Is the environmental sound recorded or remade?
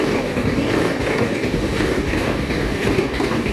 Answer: remade